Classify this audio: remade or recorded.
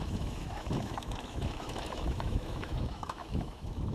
remade